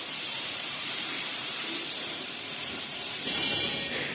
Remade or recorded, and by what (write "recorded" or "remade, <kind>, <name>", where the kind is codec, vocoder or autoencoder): remade, vocoder, BigVGAN v2